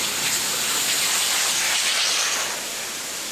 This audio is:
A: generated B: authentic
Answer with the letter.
B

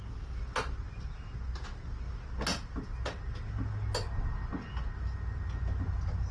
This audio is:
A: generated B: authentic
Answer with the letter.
B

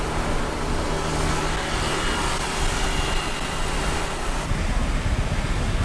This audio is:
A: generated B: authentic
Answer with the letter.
B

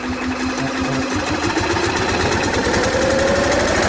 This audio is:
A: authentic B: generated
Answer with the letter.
A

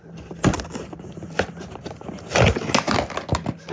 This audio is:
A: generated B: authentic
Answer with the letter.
B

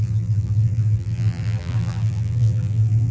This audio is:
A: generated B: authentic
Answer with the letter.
A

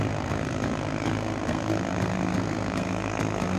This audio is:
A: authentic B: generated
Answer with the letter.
B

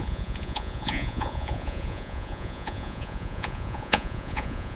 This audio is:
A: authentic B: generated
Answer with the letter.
B